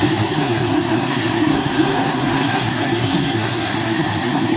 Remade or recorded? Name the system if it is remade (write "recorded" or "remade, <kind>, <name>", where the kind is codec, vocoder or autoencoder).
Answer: remade, codec, SNAC